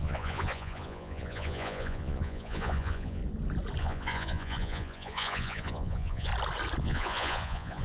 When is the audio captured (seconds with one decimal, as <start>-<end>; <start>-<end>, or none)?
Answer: 3.2-3.8; 6.3-6.8